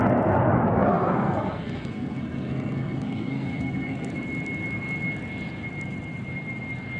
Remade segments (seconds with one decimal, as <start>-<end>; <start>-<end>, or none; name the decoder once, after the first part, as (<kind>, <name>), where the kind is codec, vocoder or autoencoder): 0.9-4.1 (codec, SNAC)